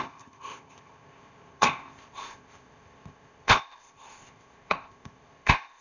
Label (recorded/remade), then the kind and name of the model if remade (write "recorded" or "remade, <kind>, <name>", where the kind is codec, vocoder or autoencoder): remade, codec, ZipCodec